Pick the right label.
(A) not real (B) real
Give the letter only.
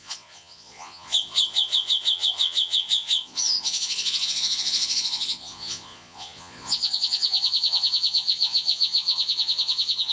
A